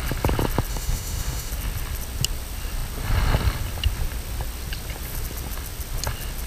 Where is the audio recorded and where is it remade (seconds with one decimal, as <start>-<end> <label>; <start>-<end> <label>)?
0.0-0.7 recorded; 0.7-1.5 remade; 1.5-6.5 recorded